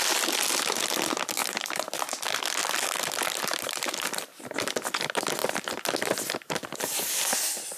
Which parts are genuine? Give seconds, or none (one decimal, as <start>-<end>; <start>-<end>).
0.0-1.4; 2.1-2.6; 4.6-7.8